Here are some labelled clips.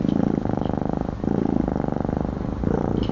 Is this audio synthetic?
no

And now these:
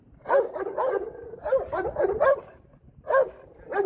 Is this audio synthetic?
no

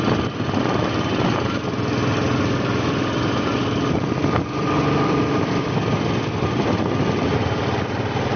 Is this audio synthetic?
no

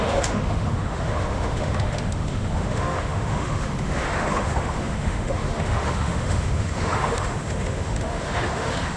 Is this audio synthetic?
yes